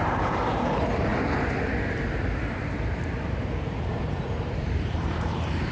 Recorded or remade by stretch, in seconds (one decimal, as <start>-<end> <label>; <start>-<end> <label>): 0.0-1.1 remade; 1.1-1.9 recorded; 1.9-5.7 remade